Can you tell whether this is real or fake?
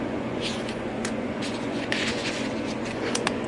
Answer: fake